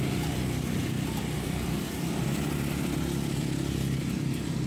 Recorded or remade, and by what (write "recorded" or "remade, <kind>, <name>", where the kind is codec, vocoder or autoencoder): remade, vocoder, BigVGAN v2